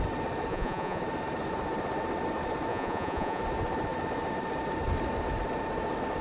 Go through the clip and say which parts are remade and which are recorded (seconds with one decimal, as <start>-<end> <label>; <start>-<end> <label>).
0.0-0.5 recorded; 0.5-1.0 remade; 1.0-2.7 recorded; 2.7-3.4 remade; 3.4-6.2 recorded

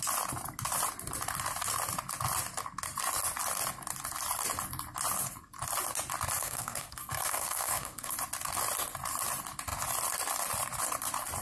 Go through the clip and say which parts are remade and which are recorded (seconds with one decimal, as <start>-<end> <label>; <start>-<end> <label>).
0.0-6.4 recorded; 6.4-8.1 remade; 8.1-11.4 recorded

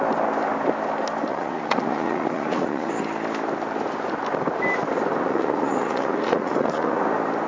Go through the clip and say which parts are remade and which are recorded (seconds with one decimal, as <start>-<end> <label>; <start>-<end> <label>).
0.0-1.3 recorded; 1.3-2.9 remade; 2.9-5.1 recorded; 5.1-7.0 remade; 7.0-7.5 recorded

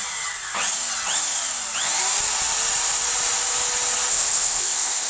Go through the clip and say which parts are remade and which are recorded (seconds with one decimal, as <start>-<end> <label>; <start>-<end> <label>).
0.0-4.1 recorded; 4.1-5.1 remade

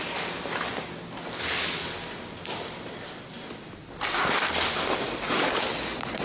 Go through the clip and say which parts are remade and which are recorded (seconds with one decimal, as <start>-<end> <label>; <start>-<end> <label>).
0.0-1.8 recorded; 1.8-5.5 remade; 5.5-6.2 recorded

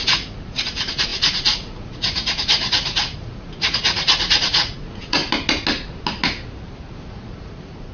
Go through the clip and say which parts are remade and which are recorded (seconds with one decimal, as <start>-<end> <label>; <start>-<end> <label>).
0.0-5.2 remade; 5.2-6.9 recorded; 6.9-7.9 remade

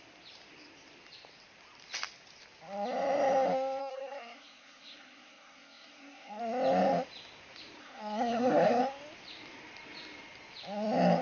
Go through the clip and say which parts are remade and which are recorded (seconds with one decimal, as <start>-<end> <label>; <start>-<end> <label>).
0.0-3.8 recorded; 3.8-6.4 remade; 6.4-7.8 recorded; 7.8-8.8 remade; 8.8-11.2 recorded